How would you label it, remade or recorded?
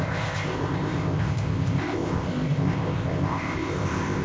remade